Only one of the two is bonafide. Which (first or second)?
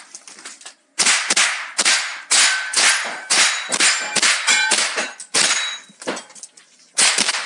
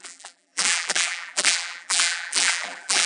first